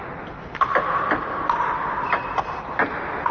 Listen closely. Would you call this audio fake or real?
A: real